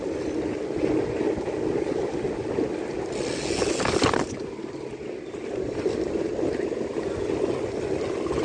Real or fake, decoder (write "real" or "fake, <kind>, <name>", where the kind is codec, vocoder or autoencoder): real